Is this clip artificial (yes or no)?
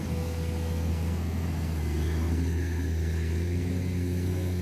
yes